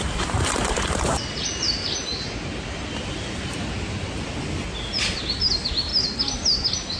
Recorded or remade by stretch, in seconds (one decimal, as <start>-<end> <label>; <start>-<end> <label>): 0.0-1.8 remade; 1.8-3.0 recorded; 3.0-3.6 remade; 3.6-5.4 recorded; 5.4-5.9 remade; 5.9-7.0 recorded